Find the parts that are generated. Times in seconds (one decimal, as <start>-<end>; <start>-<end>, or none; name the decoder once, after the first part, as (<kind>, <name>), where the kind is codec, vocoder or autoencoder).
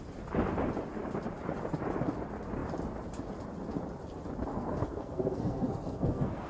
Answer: 4.5-6.5 (codec, SNAC)